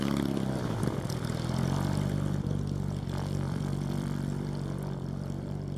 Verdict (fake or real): fake